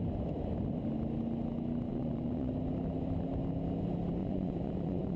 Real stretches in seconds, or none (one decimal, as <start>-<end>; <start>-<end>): 0.0-1.9; 2.5-4.2